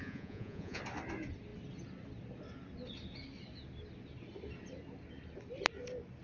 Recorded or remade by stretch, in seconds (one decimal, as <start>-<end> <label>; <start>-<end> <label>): 0.0-0.8 remade; 0.8-6.2 recorded